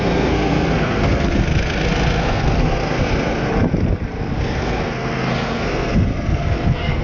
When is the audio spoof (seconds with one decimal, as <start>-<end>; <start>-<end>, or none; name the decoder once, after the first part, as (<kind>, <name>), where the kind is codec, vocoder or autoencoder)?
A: 0.0-3.5 (codec, SNAC); 4.2-7.0